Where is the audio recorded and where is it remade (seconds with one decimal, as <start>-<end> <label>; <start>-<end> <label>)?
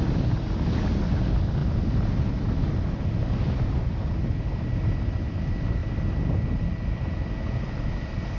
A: 0.0-8.4 recorded